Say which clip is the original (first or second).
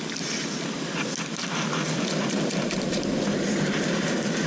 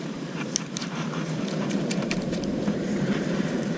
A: first